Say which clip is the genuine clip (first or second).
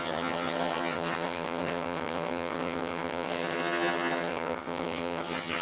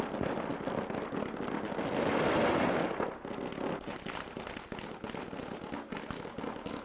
second